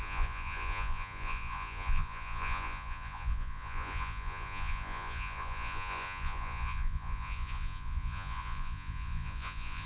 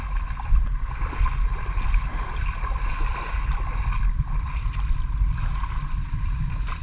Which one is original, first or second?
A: second